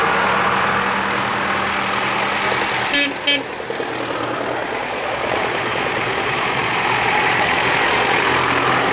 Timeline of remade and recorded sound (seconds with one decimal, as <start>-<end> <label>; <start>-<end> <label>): 0.0-4.6 recorded; 4.6-8.2 remade; 8.2-8.9 recorded